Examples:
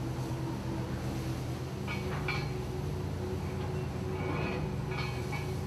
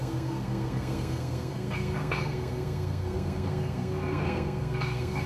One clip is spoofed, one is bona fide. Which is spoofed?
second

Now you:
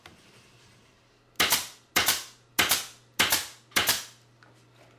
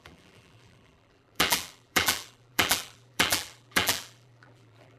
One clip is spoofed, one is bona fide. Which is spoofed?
second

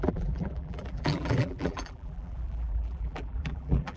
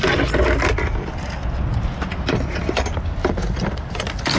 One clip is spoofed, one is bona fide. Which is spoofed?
first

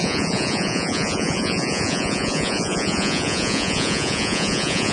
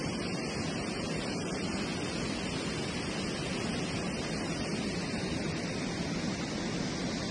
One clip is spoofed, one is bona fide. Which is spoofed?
first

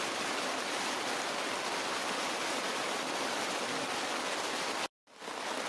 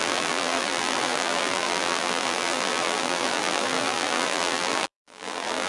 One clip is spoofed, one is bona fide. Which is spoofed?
second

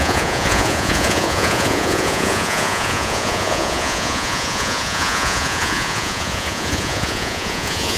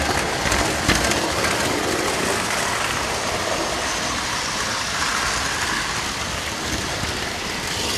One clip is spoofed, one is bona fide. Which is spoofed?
first